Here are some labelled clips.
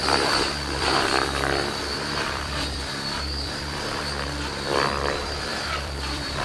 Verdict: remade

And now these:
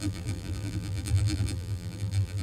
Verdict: remade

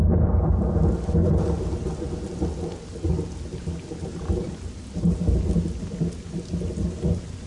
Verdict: recorded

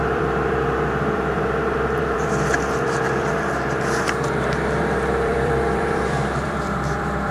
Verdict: remade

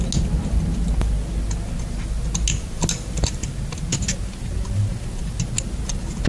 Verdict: recorded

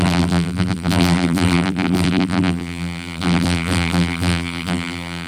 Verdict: remade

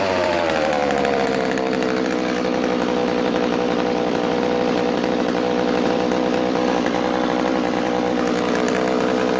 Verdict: remade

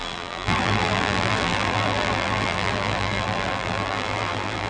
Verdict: remade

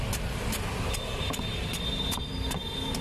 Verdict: recorded